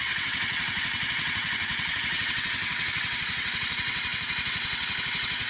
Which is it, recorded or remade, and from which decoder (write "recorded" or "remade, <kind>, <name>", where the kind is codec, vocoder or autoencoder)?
remade, vocoder, WaveNeXt